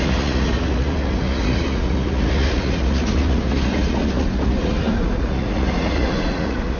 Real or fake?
fake